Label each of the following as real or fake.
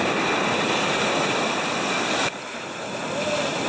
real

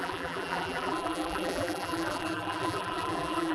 fake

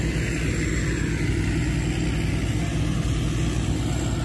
real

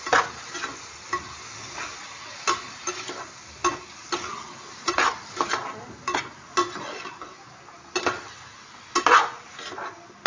real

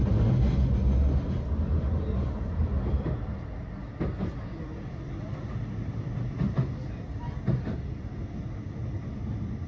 real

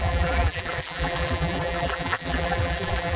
fake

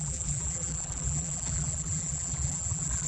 fake